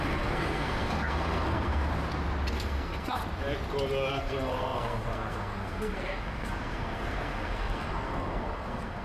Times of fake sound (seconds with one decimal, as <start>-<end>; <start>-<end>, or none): 0.0-1.9; 2.5-3.2; 4.1-9.0